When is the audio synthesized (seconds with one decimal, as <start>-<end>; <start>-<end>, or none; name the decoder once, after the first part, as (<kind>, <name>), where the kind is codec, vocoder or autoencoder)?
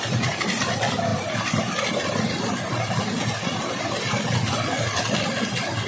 none